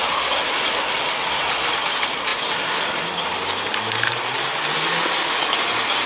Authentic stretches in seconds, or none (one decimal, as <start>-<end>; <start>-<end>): 0.0-2.3; 2.9-6.1